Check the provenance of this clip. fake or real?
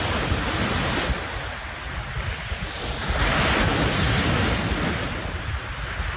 real